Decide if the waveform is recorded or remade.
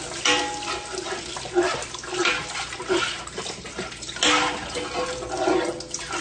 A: recorded